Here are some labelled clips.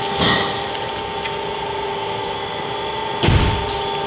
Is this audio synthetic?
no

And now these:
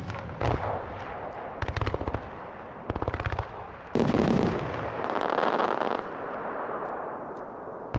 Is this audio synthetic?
no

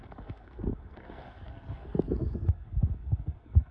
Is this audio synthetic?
yes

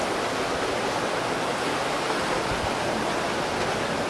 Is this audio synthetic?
no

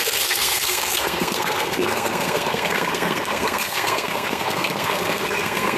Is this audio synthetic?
yes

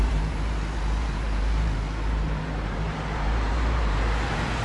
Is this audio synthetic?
yes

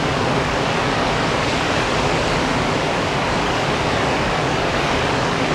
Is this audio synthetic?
yes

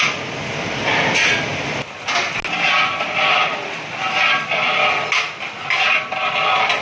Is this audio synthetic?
no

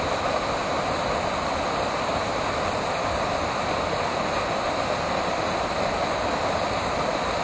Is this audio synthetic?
no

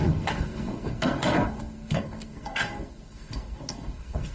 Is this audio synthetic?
yes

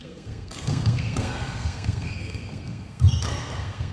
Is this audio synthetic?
yes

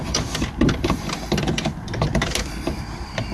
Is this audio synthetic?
yes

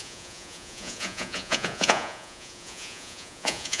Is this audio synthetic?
yes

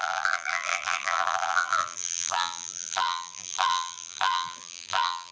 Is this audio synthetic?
yes